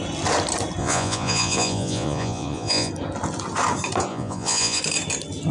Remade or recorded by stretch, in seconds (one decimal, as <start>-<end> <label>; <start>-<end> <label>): 0.0-0.8 recorded; 0.8-2.9 remade; 2.9-4.1 recorded; 4.1-4.8 remade; 4.8-5.5 recorded

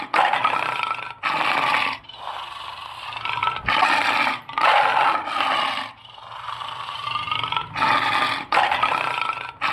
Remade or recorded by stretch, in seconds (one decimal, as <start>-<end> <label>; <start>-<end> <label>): 0.0-3.4 recorded; 3.4-4.1 remade; 4.1-9.7 recorded

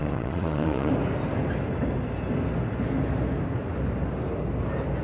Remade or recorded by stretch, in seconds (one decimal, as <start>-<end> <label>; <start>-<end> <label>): 0.0-0.9 remade; 0.9-5.0 recorded